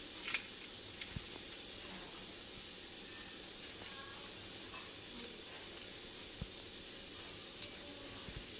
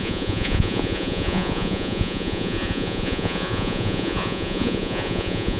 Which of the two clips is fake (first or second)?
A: second